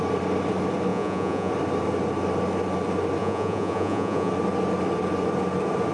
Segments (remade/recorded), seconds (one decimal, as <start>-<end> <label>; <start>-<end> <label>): 0.0-0.9 recorded; 0.9-1.5 remade; 1.5-3.2 recorded; 3.2-4.3 remade; 4.3-5.9 recorded